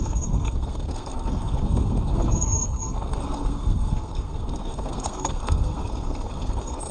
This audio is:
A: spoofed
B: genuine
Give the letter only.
A